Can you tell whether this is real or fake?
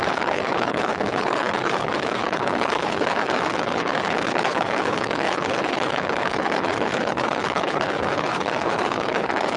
fake